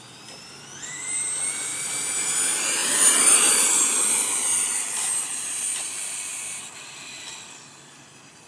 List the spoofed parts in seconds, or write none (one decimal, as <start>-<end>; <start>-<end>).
2.8-3.8